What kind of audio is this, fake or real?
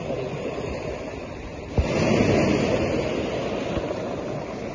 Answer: real